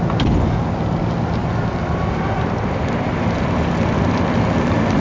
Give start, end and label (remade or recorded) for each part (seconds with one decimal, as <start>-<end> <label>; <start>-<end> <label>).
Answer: 0.0-1.4 recorded; 1.4-4.4 remade; 4.4-5.0 recorded